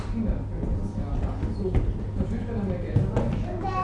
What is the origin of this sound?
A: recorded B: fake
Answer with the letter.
A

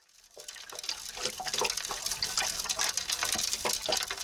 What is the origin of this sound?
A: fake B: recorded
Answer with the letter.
B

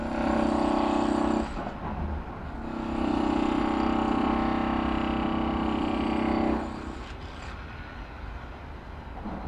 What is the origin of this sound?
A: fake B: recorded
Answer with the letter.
B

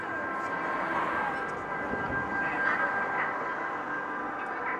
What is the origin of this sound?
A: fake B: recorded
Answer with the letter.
B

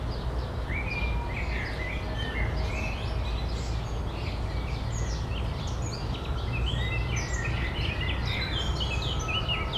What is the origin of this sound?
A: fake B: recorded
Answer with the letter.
B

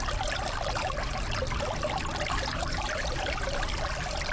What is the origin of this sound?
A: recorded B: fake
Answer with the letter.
A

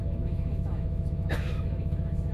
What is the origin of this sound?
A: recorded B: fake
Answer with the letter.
B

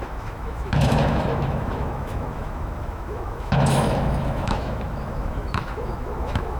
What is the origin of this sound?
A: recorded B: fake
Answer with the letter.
B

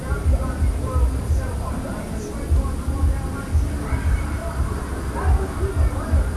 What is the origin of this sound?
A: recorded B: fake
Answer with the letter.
A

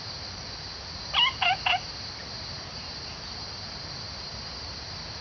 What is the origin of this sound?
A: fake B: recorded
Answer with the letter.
B